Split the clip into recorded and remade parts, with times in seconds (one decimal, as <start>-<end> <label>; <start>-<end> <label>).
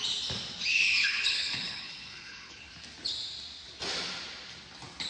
0.0-0.7 recorded; 0.7-2.7 remade; 2.7-5.1 recorded